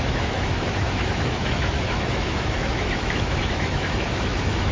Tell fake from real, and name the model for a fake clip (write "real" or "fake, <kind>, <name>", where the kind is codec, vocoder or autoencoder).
fake, autoencoder, DAC-VAE